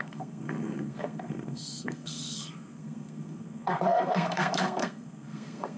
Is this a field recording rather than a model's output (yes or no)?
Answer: no